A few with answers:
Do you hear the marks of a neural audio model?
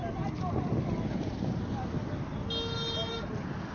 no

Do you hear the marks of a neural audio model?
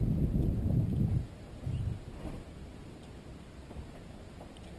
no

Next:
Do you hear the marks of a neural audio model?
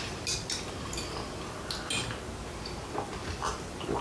no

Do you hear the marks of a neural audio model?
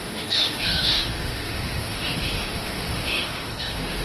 yes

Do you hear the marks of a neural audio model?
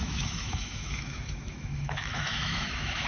yes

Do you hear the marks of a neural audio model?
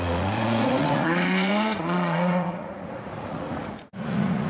yes